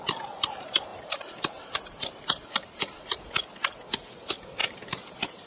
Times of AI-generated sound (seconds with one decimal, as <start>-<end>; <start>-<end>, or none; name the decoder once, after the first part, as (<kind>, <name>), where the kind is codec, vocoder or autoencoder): 0.9-3.3 (vocoder, BigVGAN v2); 4.6-5.5